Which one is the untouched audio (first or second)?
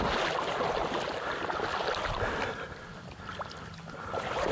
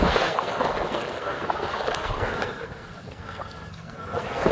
first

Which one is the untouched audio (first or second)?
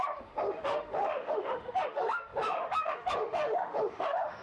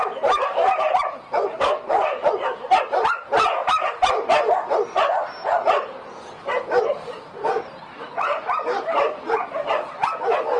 second